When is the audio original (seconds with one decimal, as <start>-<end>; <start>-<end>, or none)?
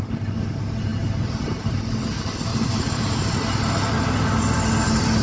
0.0-2.5; 3.0-5.2